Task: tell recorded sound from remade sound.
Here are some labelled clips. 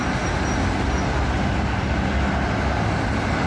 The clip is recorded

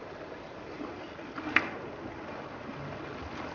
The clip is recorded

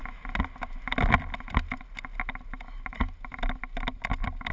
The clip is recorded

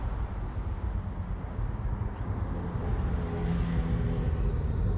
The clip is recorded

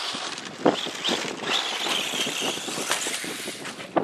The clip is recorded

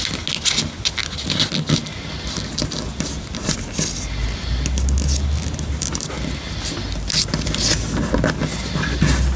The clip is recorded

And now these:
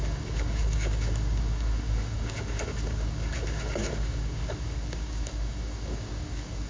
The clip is remade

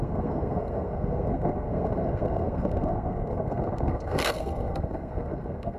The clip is remade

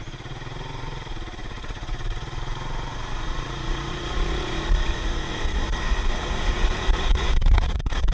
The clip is remade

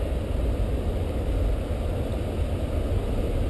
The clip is recorded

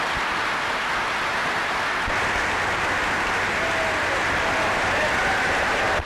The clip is recorded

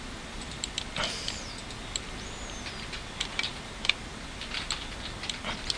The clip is recorded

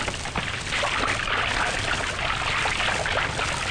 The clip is recorded